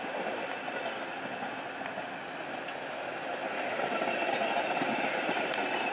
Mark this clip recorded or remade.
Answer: recorded